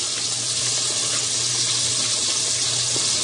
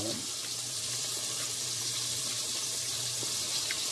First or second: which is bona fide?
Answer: first